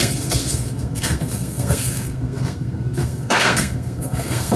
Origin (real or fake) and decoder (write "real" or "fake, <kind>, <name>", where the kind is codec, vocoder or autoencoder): fake, codec, SNAC